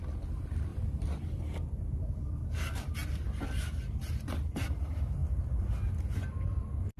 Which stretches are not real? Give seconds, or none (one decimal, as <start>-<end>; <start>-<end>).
0.7-1.4